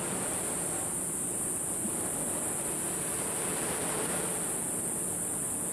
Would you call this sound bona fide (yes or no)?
yes